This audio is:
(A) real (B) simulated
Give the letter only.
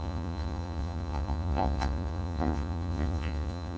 B